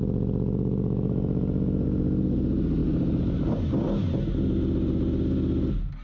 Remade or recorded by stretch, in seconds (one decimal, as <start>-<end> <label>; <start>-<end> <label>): 0.0-2.8 recorded; 2.8-3.5 remade; 3.5-6.0 recorded